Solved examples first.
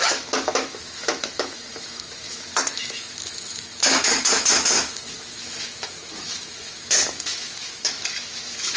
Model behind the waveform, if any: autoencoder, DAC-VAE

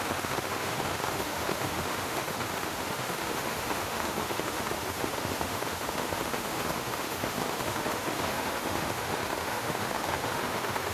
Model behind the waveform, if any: autoencoder, DAC-VAE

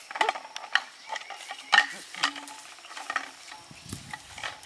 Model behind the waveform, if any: none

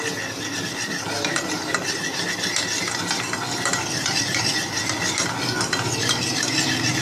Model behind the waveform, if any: none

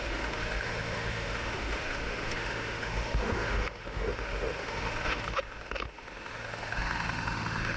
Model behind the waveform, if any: autoencoder, DAC-VAE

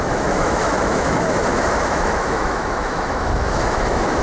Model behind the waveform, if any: autoencoder, DAC-VAE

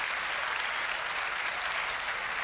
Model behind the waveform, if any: none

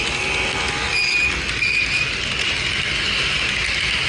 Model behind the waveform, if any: none